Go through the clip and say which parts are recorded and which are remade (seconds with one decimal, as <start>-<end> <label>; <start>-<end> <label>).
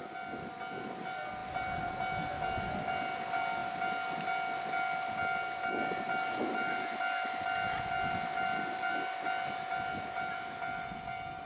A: 0.0-11.5 recorded